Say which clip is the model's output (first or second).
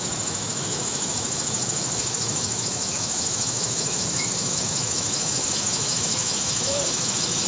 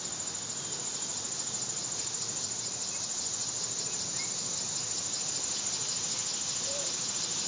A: first